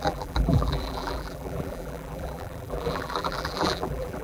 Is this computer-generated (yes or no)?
yes